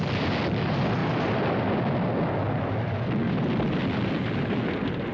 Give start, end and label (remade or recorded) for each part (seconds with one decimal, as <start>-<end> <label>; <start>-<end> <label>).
0.0-5.1 recorded